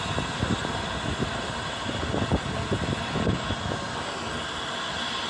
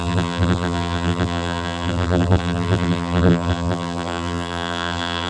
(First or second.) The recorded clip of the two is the first